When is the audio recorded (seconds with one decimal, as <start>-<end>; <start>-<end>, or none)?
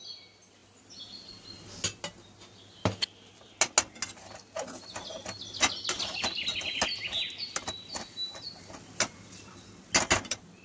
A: 0.0-10.6